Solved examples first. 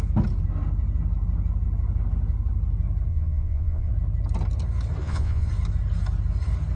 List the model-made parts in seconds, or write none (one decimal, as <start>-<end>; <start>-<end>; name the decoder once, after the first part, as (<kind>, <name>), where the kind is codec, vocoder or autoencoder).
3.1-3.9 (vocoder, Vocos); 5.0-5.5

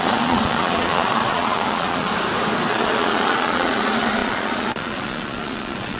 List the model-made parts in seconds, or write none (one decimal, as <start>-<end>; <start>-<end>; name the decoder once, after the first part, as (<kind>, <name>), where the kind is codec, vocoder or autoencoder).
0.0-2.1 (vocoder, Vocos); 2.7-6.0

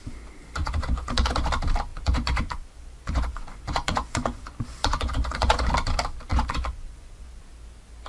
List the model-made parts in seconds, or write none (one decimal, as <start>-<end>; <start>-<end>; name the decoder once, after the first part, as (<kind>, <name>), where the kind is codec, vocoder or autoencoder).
0.6-1.5 (vocoder, Vocos); 1.9-5.7; 6.3-7.4

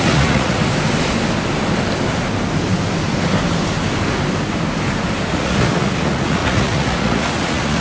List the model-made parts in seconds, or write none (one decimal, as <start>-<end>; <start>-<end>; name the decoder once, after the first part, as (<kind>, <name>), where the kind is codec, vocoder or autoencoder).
0.0-0.6 (vocoder, Vocos); 5.3-7.8

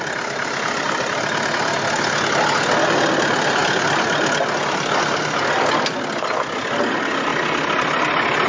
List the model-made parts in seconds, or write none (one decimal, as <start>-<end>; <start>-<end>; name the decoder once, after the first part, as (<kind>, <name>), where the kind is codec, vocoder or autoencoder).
none

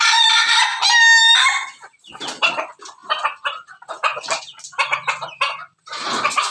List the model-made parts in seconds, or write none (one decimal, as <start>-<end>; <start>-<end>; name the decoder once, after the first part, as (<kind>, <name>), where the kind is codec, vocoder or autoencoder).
none